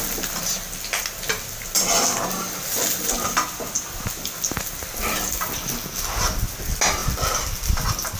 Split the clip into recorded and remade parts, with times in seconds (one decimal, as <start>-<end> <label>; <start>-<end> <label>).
0.0-8.2 recorded

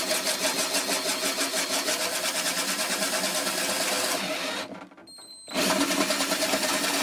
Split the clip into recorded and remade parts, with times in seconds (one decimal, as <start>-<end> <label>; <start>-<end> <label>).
0.0-7.0 recorded

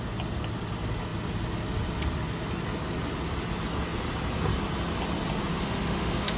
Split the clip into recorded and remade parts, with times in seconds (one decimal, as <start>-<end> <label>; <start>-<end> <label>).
0.0-5.5 recorded; 5.5-6.4 remade